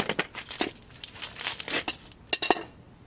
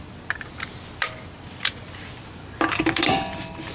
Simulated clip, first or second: second